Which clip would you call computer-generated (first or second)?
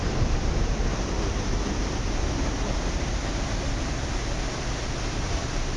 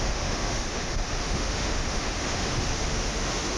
second